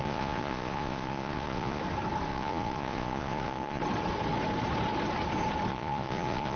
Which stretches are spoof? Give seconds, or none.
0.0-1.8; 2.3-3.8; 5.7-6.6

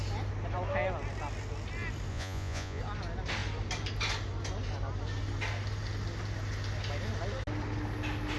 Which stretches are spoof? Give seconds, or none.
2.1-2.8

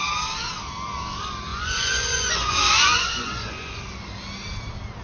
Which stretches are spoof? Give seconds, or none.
1.5-3.8

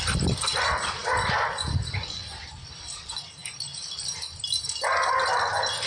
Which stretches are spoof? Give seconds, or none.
none